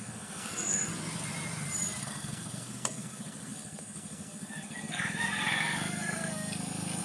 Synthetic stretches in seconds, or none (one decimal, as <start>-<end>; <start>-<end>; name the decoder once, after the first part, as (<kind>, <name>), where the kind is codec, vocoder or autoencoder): 0.0-0.9 (codec, SNAC); 2.0-7.0